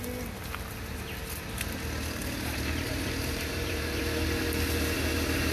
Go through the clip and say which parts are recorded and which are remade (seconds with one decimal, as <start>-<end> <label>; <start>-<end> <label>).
0.0-2.2 recorded; 2.2-4.0 remade; 4.0-5.5 recorded